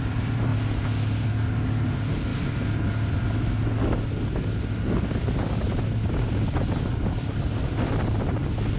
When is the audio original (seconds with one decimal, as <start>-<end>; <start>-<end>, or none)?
0.5-1.8; 2.3-6.9